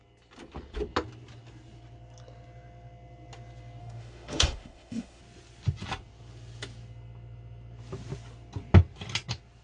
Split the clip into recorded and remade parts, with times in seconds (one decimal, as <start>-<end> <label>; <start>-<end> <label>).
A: 0.0-3.8 recorded; 3.8-5.2 remade; 5.2-9.6 recorded